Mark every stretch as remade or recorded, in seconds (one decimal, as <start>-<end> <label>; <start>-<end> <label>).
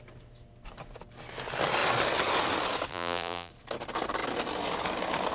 0.0-2.9 recorded; 2.9-3.5 remade; 3.5-5.3 recorded